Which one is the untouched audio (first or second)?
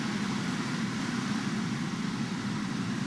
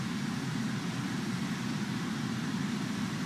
second